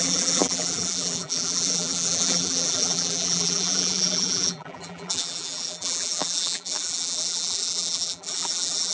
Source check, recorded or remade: remade